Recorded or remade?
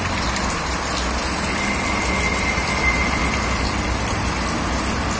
recorded